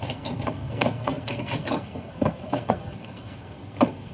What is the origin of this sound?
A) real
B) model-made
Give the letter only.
B